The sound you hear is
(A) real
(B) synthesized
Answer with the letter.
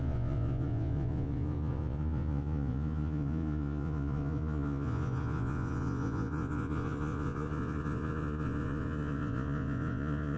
B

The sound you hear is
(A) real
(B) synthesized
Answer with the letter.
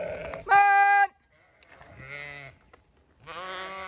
A